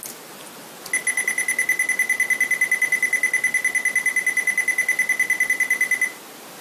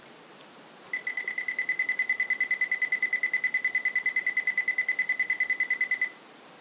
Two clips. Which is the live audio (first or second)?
first